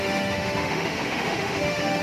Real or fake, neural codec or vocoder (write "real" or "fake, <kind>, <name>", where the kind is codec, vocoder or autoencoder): fake, autoencoder, DAC-VAE